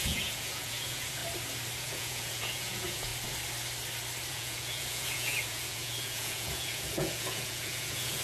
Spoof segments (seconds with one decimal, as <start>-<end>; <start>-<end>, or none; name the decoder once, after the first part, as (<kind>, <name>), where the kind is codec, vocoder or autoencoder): 0.0-1.2 (vocoder, Vocos); 1.8-3.1; 4.3-8.2